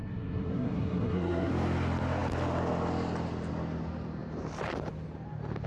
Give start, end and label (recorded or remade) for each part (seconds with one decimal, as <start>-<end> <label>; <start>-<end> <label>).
0.0-1.5 remade; 1.5-5.7 recorded

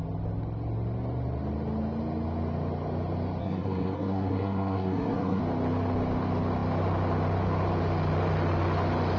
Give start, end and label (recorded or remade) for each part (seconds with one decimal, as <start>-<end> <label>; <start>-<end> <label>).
0.0-3.4 recorded; 3.4-5.4 remade; 5.4-9.2 recorded

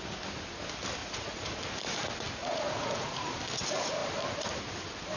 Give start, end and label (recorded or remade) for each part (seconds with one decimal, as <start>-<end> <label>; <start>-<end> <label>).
0.0-1.0 recorded; 1.0-1.6 remade; 1.6-2.4 recorded; 2.4-3.3 remade; 3.3-5.2 recorded

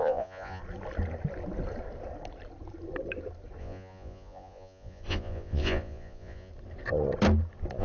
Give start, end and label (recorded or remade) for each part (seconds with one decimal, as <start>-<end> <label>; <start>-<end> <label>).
0.0-0.6 remade; 0.6-3.6 recorded; 3.6-6.5 remade; 6.5-7.8 recorded

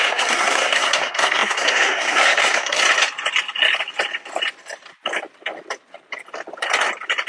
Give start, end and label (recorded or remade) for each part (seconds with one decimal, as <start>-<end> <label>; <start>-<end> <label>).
0.0-2.8 remade; 2.8-7.3 recorded

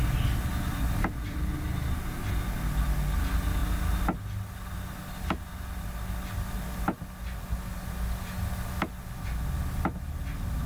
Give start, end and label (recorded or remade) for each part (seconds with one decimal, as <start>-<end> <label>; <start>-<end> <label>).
0.0-10.7 recorded

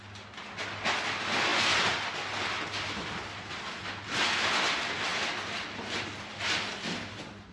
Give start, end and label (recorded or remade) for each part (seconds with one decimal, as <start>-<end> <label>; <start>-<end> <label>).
0.0-7.5 recorded

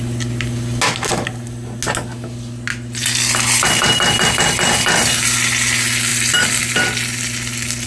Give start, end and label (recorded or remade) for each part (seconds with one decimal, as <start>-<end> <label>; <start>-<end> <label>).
0.0-6.1 recorded; 6.1-6.6 remade; 6.6-7.9 recorded